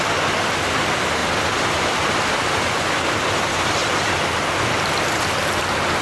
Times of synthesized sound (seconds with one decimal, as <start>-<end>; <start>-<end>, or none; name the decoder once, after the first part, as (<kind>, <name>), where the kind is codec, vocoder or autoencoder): none